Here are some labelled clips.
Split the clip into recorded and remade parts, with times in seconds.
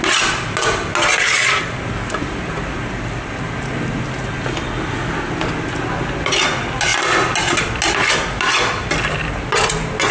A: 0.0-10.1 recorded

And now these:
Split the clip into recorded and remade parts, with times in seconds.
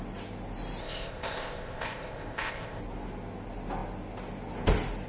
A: 0.0-0.8 recorded; 0.8-2.8 remade; 2.8-5.1 recorded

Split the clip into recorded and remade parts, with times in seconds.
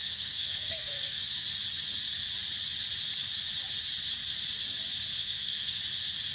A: 0.0-1.2 remade; 1.2-5.2 recorded; 5.2-5.8 remade; 5.8-6.3 recorded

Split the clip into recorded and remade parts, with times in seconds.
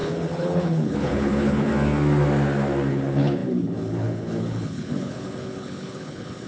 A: 0.0-1.7 remade; 1.7-2.9 recorded; 2.9-6.5 remade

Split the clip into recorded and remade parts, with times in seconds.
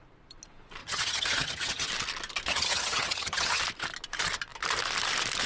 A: 0.0-0.8 recorded; 0.8-1.9 remade; 1.9-2.5 recorded; 2.5-3.6 remade; 3.6-5.5 recorded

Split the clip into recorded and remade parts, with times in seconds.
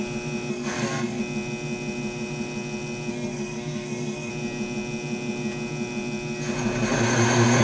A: 0.0-0.5 recorded; 0.5-1.2 remade; 1.2-3.1 recorded; 3.1-4.3 remade; 4.3-7.6 recorded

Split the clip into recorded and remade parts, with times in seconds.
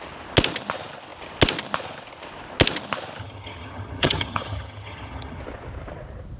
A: 0.0-3.2 recorded; 3.2-5.4 remade; 5.4-6.4 recorded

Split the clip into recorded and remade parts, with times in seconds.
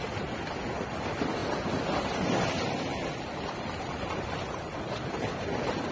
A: 0.0-5.9 recorded